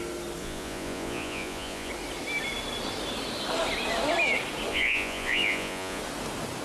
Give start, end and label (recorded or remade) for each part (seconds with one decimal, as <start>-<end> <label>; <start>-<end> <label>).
0.0-0.4 recorded; 0.4-1.9 remade; 1.9-4.7 recorded; 4.7-6.0 remade; 6.0-6.6 recorded